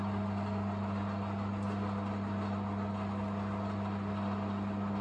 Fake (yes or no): no